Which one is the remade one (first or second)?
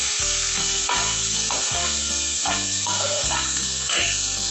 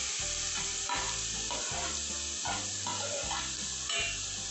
first